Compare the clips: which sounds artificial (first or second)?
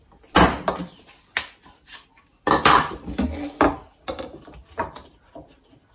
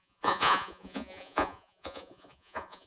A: second